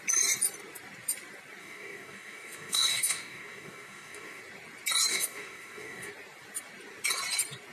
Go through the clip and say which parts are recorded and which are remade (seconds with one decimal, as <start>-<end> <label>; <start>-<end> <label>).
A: 0.0-1.6 recorded; 1.6-4.4 remade; 4.4-5.1 recorded; 5.1-6.1 remade; 6.1-7.7 recorded